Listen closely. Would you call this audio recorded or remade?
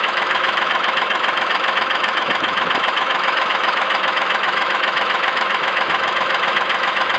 remade